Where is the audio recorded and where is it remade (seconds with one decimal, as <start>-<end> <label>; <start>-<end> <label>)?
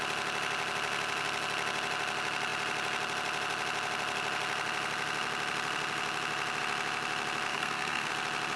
0.0-7.5 recorded; 7.5-8.1 remade; 8.1-8.6 recorded